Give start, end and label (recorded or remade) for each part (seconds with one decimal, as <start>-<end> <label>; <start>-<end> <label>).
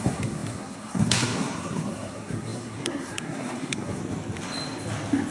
0.0-4.0 remade; 4.0-5.3 recorded